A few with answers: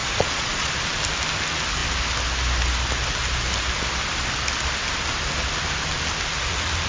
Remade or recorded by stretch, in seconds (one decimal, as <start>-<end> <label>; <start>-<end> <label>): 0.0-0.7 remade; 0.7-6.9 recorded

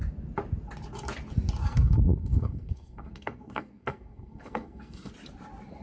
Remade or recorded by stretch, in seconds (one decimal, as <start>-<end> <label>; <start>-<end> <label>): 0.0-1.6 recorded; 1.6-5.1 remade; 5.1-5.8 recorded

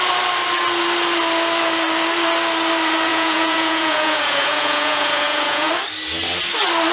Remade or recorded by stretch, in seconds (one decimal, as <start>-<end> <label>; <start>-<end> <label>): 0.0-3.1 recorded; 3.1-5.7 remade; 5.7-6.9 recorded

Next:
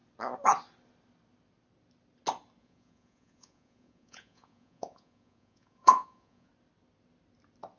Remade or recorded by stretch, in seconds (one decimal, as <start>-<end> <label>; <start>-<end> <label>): 0.0-2.6 recorded; 2.6-6.5 remade; 6.5-7.8 recorded

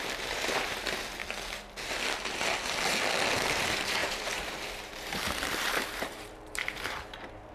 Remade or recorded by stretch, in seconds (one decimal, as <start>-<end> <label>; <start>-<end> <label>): 0.0-1.2 remade; 1.2-3.3 recorded; 3.3-7.5 remade

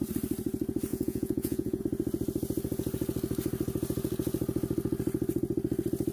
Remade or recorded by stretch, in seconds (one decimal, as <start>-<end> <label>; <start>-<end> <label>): 0.0-0.9 recorded; 0.9-1.8 remade; 1.8-6.1 recorded

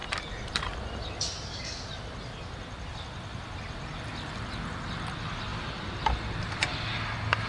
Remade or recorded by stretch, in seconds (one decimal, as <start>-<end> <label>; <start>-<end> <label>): 0.0-7.5 recorded